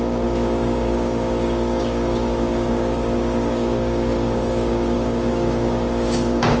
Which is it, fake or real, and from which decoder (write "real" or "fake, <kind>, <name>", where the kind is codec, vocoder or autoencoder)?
fake, codec, DAC